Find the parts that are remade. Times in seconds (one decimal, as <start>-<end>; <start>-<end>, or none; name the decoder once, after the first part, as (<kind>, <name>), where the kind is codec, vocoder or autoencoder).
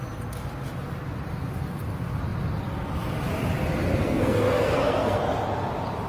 4.0-5.2 (codec, SNAC)